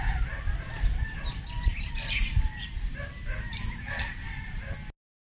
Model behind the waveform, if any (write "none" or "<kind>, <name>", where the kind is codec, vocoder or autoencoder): none